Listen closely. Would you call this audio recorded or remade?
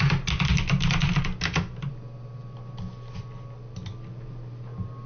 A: recorded